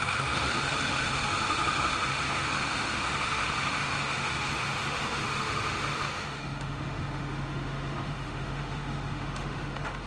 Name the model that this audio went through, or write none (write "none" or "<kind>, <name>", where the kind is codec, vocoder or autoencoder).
autoencoder, DAC-VAE